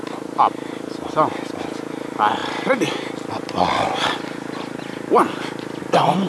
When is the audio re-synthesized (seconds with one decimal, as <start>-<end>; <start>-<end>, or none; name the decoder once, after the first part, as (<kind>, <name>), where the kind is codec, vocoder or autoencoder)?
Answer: none